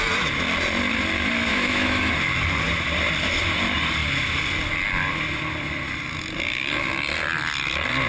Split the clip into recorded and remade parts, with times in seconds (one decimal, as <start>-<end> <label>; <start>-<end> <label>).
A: 0.0-1.5 recorded; 1.5-2.1 remade; 2.1-8.1 recorded